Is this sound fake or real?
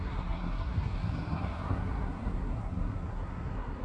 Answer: fake